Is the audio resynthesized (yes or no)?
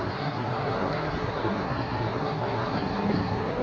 yes